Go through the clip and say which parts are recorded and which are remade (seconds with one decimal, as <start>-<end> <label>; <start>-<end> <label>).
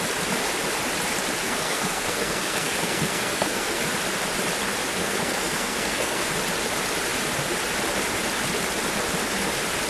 0.0-1.4 recorded; 1.4-3.8 remade; 3.8-5.0 recorded; 5.0-6.3 remade; 6.3-9.9 recorded